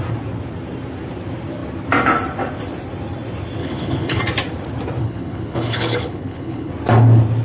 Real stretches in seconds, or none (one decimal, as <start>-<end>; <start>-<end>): 0.0-3.6; 4.2-5.0; 6.7-7.4